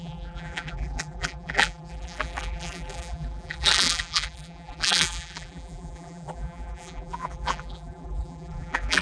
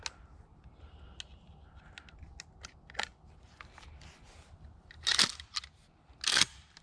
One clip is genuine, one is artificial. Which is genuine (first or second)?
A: second